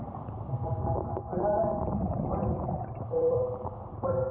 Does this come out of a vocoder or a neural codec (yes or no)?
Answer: yes